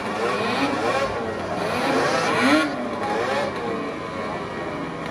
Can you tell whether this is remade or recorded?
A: recorded